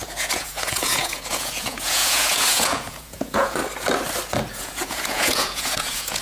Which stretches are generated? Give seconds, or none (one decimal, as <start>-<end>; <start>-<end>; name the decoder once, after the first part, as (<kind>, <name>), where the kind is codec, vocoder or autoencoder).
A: 0.0-3.6 (vocoder, Vocos); 4.5-6.2